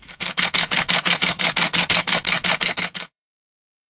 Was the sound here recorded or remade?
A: remade